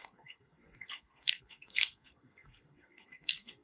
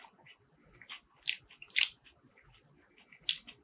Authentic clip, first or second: second